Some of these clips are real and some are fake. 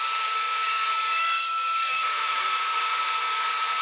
fake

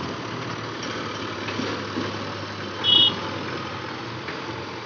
real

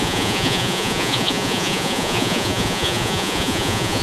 fake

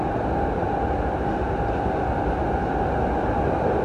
real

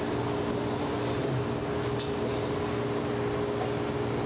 real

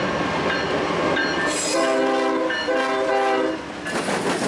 real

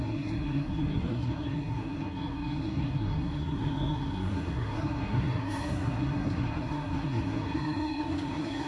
fake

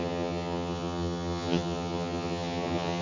fake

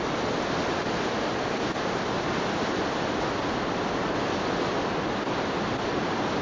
real